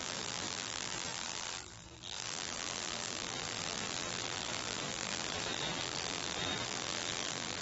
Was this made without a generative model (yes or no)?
no